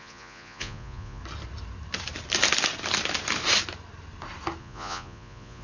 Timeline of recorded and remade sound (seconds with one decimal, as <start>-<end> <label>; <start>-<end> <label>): 0.0-1.2 remade; 1.2-4.6 recorded; 4.6-5.6 remade